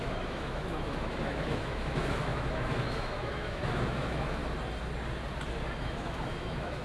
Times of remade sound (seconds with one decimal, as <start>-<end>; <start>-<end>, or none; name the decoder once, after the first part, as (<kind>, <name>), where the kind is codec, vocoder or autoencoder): 0.0-4.4 (autoencoder, DAC-VAE); 5.8-6.8